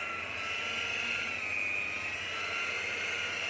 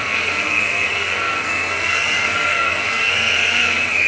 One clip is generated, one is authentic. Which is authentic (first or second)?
first